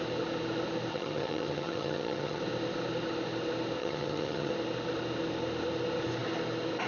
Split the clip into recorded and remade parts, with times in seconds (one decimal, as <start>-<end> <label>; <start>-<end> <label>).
0.0-0.9 recorded; 0.9-2.4 remade; 2.4-3.8 recorded; 3.8-4.5 remade; 4.5-6.9 recorded